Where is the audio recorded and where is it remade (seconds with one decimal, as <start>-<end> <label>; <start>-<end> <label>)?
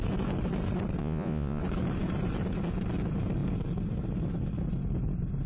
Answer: 0.0-1.0 recorded; 1.0-1.6 remade; 1.6-5.5 recorded